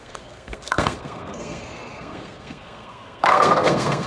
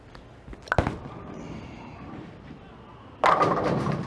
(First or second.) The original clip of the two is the second